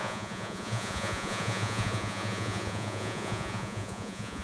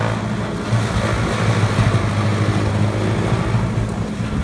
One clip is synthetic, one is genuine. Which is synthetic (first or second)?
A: first